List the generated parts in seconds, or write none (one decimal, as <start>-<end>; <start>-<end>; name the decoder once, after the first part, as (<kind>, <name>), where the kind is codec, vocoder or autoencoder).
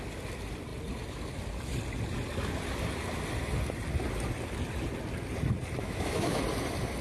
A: 5.8-6.4 (autoencoder, DAC-VAE)